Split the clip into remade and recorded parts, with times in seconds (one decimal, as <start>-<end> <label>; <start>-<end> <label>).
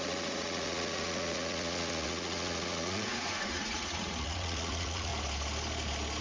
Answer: 0.0-5.1 remade; 5.1-6.2 recorded